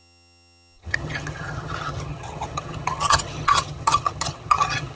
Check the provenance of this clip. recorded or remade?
remade